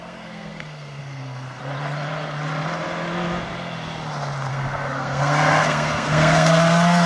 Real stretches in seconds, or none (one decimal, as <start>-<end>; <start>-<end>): 1.6-4.5